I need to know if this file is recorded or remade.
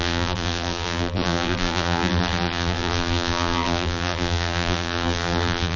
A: remade